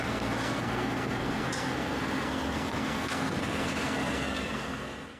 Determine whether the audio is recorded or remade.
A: remade